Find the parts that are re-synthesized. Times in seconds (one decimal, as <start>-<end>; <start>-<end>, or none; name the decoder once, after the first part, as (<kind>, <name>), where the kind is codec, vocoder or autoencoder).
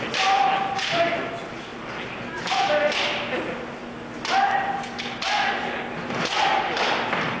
none